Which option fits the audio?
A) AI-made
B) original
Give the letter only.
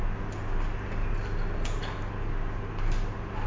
B